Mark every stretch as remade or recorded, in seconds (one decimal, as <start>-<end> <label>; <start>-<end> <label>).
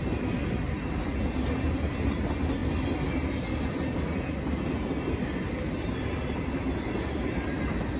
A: 0.0-8.0 recorded